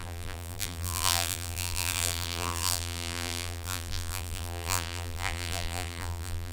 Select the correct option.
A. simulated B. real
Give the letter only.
A